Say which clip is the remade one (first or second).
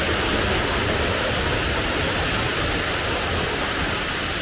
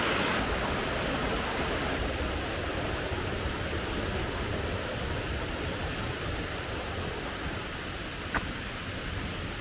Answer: second